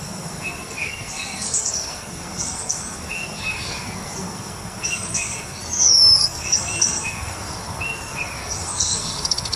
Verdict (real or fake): fake